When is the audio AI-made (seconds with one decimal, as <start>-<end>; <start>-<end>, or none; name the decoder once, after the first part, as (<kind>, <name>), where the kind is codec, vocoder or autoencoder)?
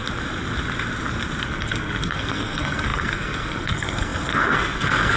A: 1.4-5.2 (codec, SNAC)